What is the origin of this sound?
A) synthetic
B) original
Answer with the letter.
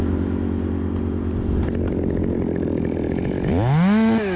B